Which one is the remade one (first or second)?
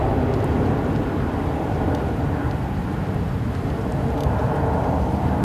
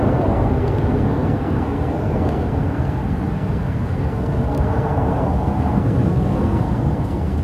second